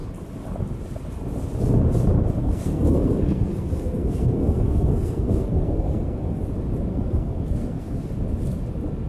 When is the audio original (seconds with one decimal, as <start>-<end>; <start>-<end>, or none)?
0.0-2.4; 6.4-6.9; 8.1-9.1